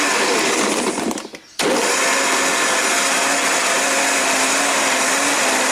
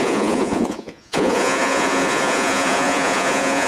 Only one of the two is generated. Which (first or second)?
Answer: second